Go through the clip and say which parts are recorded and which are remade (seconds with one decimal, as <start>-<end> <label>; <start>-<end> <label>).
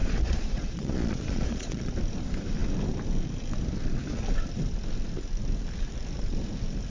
0.0-1.9 remade; 1.9-6.9 recorded